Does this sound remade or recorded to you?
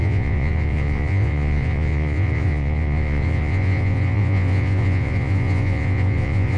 remade